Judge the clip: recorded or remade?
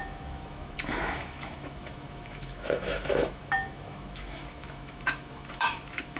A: remade